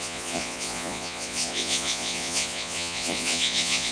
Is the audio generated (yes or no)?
yes